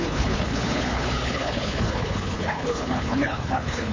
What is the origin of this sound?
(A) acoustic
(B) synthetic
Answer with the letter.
B